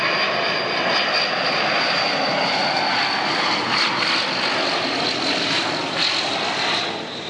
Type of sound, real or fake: real